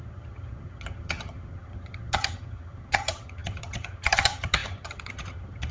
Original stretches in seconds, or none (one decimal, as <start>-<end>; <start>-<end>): none